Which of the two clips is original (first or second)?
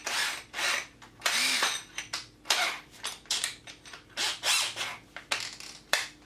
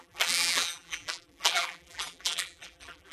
first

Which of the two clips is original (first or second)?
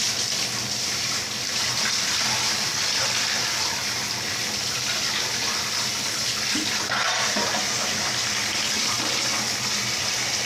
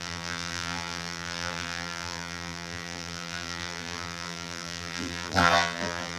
first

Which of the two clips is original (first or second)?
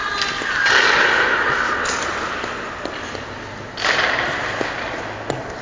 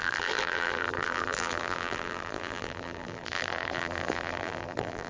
first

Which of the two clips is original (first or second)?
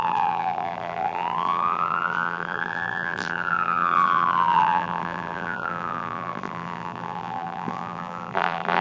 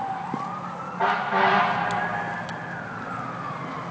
second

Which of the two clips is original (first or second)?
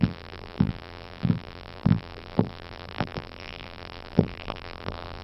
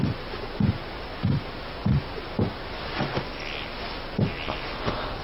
second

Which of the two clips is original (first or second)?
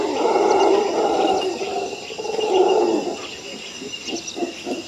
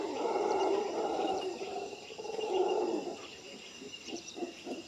first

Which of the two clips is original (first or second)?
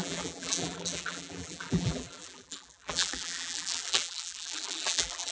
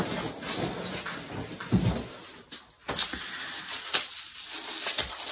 second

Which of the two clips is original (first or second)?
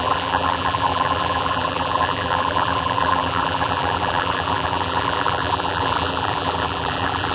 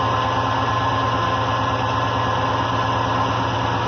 second